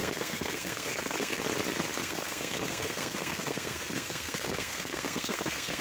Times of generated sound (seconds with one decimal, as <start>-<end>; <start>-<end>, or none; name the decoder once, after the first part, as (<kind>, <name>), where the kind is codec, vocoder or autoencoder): 0.0-1.4 (codec, SNAC); 2.0-5.8